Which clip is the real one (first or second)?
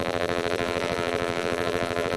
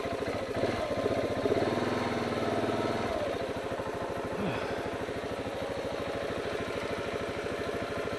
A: second